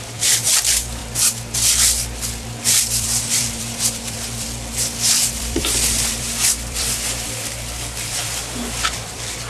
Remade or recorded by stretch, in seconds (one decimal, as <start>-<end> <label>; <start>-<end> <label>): 0.0-1.0 remade; 1.0-2.3 recorded; 2.3-9.5 remade